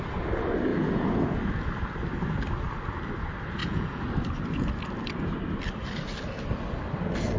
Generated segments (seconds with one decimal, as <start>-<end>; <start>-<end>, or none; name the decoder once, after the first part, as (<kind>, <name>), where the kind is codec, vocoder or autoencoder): 0.7-1.4 (vocoder, Vocos); 3.6-4.1